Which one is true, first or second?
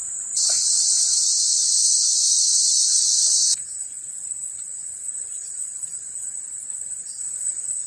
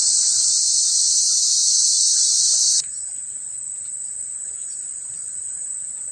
second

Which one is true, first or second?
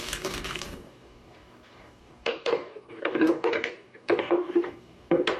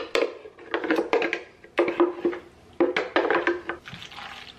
second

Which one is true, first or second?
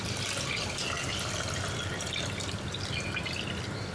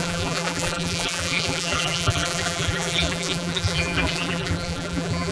first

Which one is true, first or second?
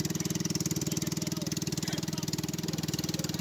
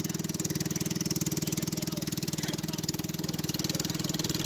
second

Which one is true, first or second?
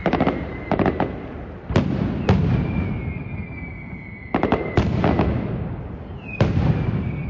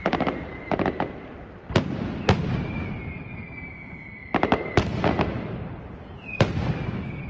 first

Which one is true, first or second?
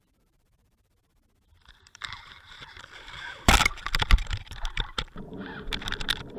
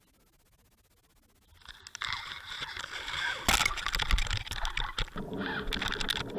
second